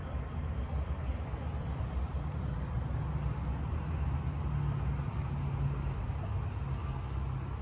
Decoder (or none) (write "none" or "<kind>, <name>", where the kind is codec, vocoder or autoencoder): none